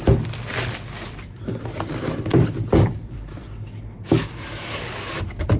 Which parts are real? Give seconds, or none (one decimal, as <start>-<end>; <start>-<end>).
0.0-0.5; 3.4-5.6